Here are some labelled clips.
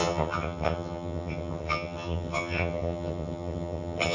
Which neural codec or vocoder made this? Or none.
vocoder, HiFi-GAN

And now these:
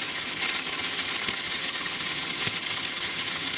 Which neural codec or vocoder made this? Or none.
vocoder, HiFi-GAN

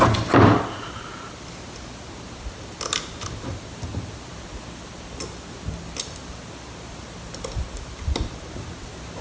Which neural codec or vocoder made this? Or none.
none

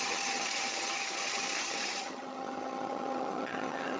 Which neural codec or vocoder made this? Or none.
vocoder, HiFi-GAN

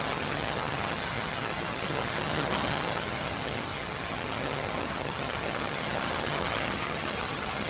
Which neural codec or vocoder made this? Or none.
vocoder, HiFi-GAN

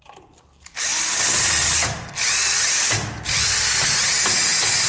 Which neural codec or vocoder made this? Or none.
none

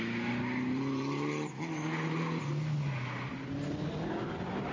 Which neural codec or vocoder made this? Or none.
none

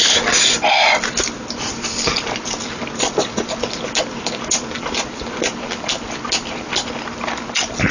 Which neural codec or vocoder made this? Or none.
none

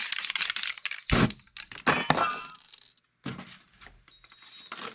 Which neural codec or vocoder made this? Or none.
none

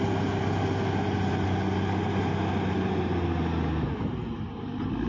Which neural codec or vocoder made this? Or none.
none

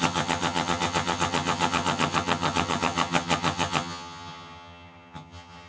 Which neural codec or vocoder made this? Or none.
vocoder, HiFi-GAN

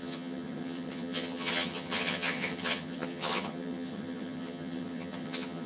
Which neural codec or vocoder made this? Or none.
vocoder, HiFi-GAN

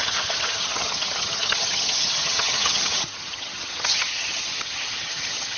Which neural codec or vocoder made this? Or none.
vocoder, HiFi-GAN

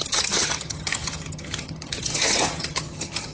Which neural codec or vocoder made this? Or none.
vocoder, HiFi-GAN